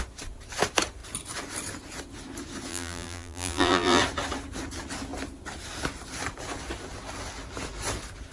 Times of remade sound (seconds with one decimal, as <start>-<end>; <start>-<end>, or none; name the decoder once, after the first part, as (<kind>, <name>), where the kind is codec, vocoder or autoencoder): 2.7-4.0 (vocoder, BigVGAN v2)